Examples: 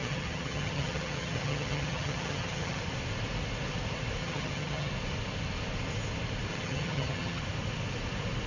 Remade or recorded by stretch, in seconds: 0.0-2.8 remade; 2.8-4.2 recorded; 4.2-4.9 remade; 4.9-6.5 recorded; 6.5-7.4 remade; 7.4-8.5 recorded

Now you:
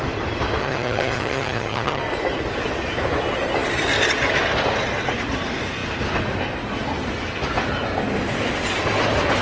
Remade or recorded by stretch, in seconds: 0.0-0.6 recorded; 0.6-2.0 remade; 2.0-9.4 recorded

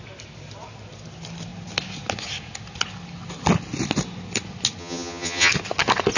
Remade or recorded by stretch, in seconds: 0.0-4.8 recorded; 4.8-5.5 remade; 5.5-6.2 recorded

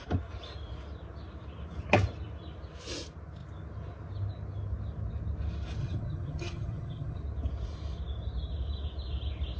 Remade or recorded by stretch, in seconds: 0.0-5.8 recorded; 5.8-7.2 remade; 7.2-9.6 recorded

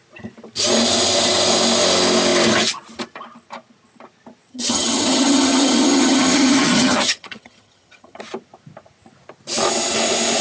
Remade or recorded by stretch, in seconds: 0.0-4.5 recorded; 4.5-8.2 remade; 8.2-10.4 recorded

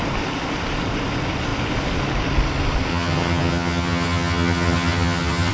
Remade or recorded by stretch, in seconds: 0.0-2.9 recorded; 2.9-5.5 remade

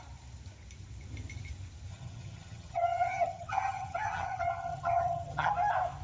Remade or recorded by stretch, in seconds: 0.0-1.9 recorded; 1.9-5.5 remade; 5.5-6.0 recorded